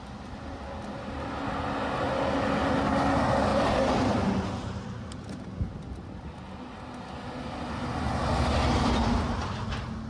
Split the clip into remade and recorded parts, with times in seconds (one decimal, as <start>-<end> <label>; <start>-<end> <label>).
0.0-3.5 recorded; 3.5-4.1 remade; 4.1-10.1 recorded